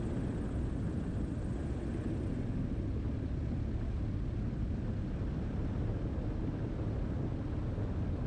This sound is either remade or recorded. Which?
recorded